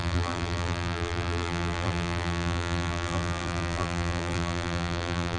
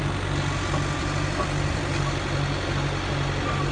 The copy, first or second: first